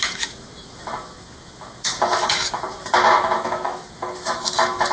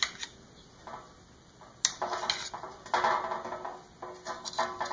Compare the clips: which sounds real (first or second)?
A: second